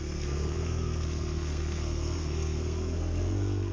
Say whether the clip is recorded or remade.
remade